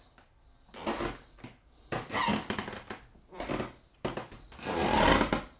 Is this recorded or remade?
recorded